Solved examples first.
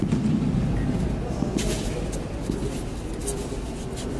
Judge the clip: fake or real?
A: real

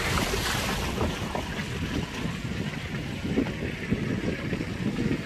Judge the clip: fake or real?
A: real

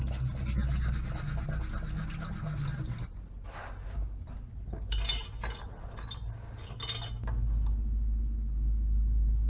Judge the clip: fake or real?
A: real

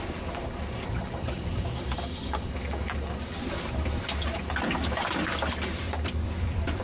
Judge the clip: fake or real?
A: fake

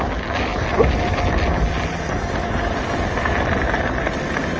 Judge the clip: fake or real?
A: real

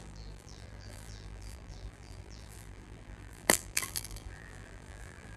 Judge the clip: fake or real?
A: fake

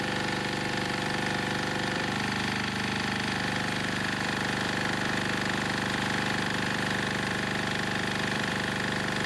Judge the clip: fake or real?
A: fake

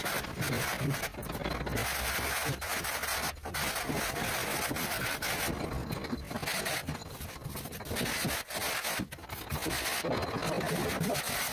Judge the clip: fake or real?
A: real